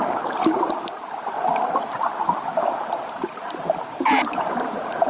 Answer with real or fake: real